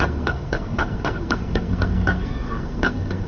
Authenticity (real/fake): fake